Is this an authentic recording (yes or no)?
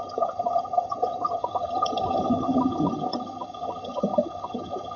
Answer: no